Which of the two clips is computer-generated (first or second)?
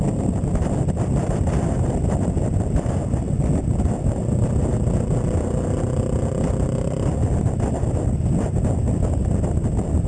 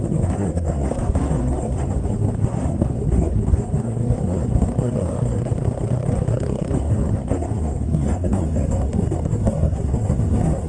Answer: second